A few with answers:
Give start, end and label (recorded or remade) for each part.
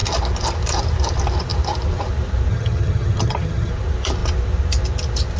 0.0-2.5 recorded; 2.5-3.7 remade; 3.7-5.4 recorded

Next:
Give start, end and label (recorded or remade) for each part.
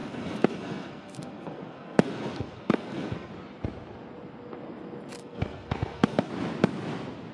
0.0-3.3 remade; 3.3-5.2 recorded; 5.2-6.3 remade; 6.3-7.3 recorded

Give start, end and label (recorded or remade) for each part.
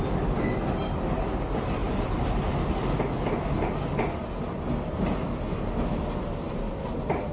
0.0-7.3 recorded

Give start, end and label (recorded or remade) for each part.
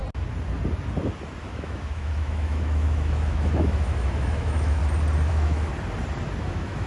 0.0-1.4 recorded; 1.4-4.8 remade; 4.8-5.3 recorded; 5.3-5.7 remade; 5.7-6.4 recorded; 6.4-6.9 remade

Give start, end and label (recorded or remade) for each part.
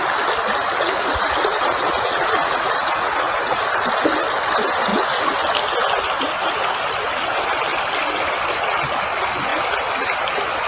0.0-0.8 recorded; 0.8-3.6 remade; 3.6-4.9 recorded; 4.9-5.4 remade; 5.4-10.7 recorded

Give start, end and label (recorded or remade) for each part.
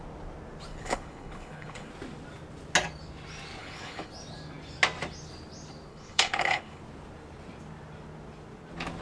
0.0-0.7 recorded; 0.7-1.9 remade; 1.9-3.6 recorded; 3.6-4.1 remade; 4.1-5.9 recorded; 5.9-6.8 remade; 6.8-9.0 recorded